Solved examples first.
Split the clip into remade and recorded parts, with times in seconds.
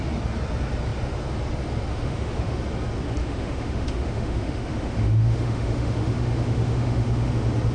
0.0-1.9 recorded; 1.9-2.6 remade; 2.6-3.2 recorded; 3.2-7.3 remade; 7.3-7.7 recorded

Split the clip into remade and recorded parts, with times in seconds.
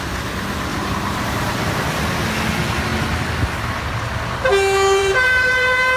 0.0-0.7 recorded; 0.7-1.5 remade; 1.5-5.0 recorded; 5.0-6.0 remade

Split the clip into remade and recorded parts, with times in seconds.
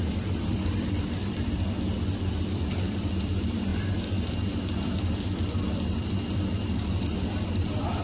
0.0-8.0 remade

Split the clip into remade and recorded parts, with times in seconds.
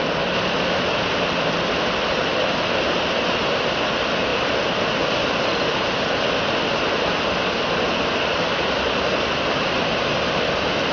0.0-10.9 recorded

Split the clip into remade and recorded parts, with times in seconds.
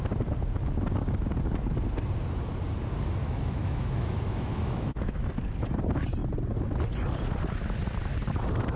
0.0-3.2 recorded; 3.2-5.3 remade; 5.3-8.8 recorded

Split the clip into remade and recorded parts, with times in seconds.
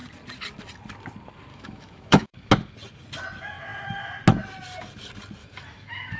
0.0-1.5 recorded; 1.5-2.5 remade; 2.5-5.4 recorded; 5.4-6.2 remade